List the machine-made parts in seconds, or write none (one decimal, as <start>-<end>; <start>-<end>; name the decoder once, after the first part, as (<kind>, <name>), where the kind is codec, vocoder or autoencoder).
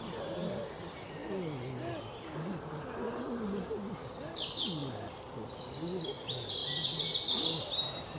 none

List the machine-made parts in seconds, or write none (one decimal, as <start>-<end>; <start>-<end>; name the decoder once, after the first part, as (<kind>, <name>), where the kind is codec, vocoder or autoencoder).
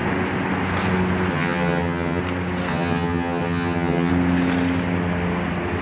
1.3-2.2 (vocoder, HiFi-GAN); 2.7-4.1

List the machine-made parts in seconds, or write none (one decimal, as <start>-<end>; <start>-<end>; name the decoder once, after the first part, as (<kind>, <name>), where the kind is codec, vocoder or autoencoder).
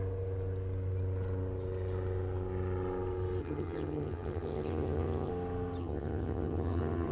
3.4-5.3 (vocoder, HiFi-GAN); 5.8-7.1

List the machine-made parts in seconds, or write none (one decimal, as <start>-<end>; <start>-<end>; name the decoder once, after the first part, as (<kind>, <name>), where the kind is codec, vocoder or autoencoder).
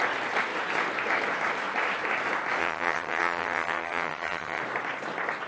2.6-4.6 (vocoder, HiFi-GAN)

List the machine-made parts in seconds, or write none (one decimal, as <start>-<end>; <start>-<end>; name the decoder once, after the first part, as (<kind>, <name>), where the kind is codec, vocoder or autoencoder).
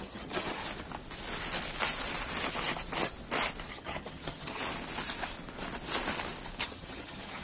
0.0-0.6 (vocoder, HiFi-GAN); 3.7-4.6; 6.6-7.4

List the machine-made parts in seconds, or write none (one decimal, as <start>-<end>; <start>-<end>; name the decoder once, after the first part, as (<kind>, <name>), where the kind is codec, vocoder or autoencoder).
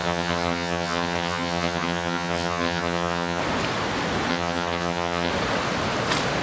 0.0-3.4 (vocoder, HiFi-GAN); 4.3-5.3